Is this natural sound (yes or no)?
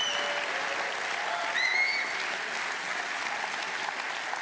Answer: yes